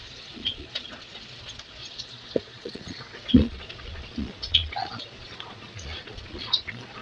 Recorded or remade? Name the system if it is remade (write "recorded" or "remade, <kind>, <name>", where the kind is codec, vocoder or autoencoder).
remade, vocoder, Vocos